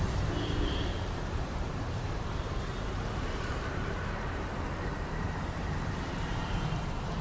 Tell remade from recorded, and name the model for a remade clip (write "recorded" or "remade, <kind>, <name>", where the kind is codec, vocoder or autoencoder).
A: remade, vocoder, BigVGAN v2